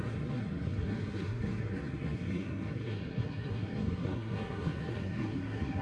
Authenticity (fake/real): fake